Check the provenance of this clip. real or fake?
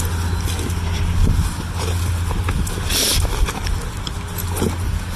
real